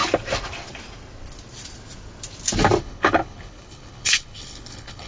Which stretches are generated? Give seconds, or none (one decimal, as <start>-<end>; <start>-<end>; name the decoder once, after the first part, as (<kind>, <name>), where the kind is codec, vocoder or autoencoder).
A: 2.8-5.1 (codec, HILCodec)